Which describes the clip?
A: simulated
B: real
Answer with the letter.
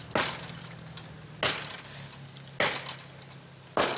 B